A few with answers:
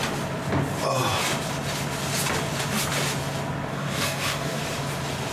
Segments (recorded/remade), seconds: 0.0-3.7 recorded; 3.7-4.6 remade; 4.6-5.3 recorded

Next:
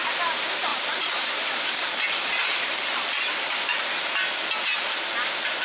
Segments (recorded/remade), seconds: 0.0-0.7 recorded; 0.7-2.0 remade; 2.0-2.5 recorded; 2.5-3.6 remade; 3.6-5.6 recorded

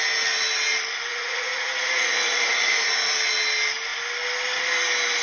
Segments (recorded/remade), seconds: 0.0-1.1 recorded; 1.1-3.1 remade; 3.1-5.2 recorded

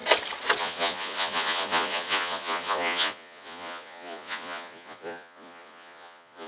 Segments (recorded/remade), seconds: 0.0-0.6 recorded; 0.6-6.5 remade

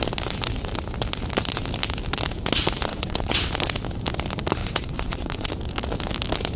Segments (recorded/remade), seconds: 0.0-2.9 recorded; 2.9-3.5 remade; 3.5-4.6 recorded; 4.6-5.5 remade; 5.5-6.6 recorded